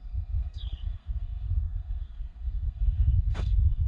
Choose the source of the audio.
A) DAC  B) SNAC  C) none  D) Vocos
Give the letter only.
B